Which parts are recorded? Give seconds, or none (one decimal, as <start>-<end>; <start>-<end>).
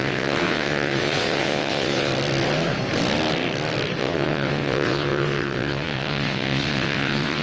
2.1-4.0